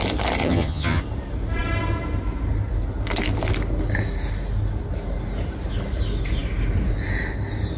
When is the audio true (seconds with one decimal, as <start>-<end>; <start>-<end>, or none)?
0.0-0.4; 1.0-7.8